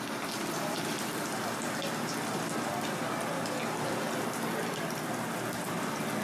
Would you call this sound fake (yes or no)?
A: yes